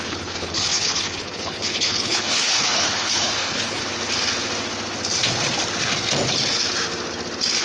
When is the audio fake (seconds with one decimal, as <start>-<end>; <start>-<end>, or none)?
0.0-3.8